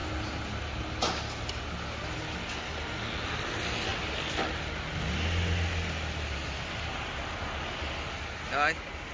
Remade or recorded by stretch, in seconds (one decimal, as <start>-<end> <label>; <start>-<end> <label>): 0.0-9.1 recorded